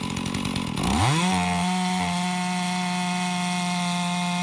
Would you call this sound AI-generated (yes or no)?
no